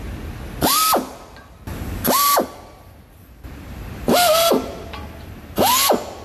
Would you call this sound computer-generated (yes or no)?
no